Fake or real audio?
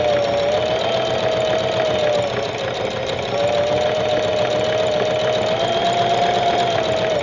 real